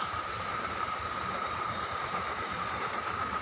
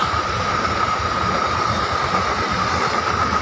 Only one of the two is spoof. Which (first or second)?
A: first